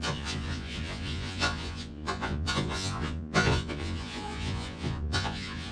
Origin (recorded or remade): remade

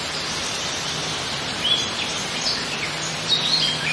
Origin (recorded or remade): remade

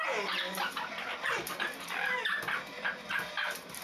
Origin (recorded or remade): remade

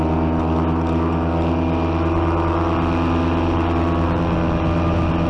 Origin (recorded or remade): recorded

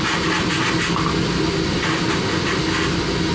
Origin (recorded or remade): recorded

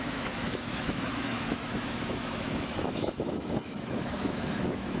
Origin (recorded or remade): remade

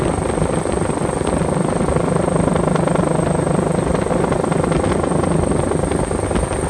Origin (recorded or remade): recorded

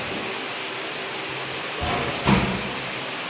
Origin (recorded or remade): recorded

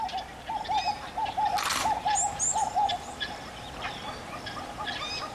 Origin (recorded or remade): recorded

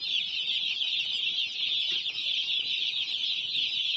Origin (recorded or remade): recorded